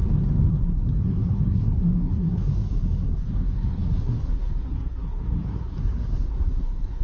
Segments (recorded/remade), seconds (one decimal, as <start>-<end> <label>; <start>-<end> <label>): 0.0-0.5 recorded; 0.5-7.0 remade